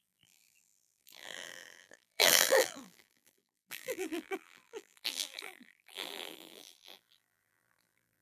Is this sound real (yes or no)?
no